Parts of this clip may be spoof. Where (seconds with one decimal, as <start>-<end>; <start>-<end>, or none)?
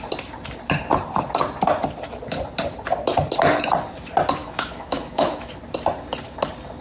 4.4-5.6